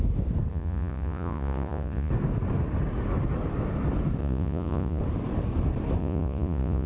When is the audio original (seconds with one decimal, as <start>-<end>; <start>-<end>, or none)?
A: 0.0-0.5; 2.1-4.2; 5.0-6.0